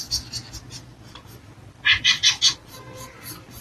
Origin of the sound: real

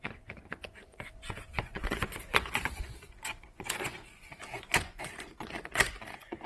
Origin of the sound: fake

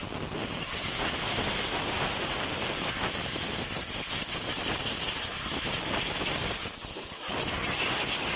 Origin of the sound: real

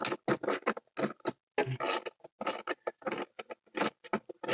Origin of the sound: real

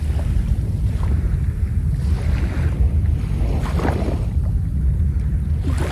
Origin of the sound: real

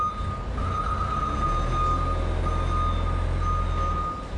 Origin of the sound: real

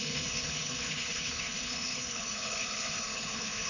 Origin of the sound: fake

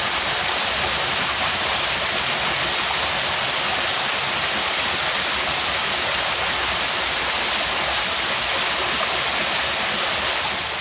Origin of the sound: real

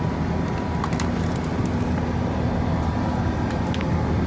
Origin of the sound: real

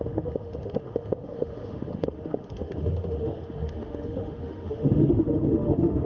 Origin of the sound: fake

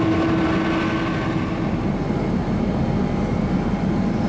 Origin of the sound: real